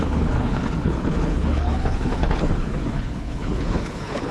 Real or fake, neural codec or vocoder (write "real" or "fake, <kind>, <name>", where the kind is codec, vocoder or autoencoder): fake, codec, HILCodec